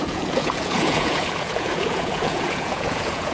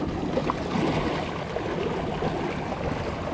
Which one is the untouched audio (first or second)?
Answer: second